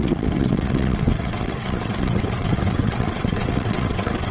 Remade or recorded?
remade